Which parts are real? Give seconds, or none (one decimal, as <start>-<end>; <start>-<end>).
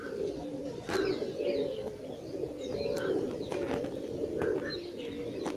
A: 0.0-5.6